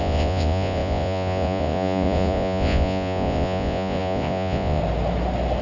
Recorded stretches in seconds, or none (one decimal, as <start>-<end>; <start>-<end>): 4.8-5.6